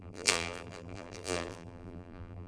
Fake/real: fake